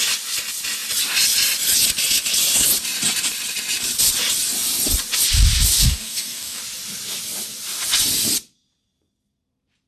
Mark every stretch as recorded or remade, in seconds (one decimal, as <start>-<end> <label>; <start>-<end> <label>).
0.0-5.8 recorded; 5.8-6.6 remade; 6.6-9.9 recorded